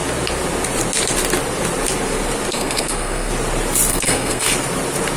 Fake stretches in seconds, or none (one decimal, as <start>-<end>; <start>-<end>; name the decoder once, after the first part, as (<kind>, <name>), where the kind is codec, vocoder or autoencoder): 2.5-3.3 (codec, SNAC); 3.9-4.5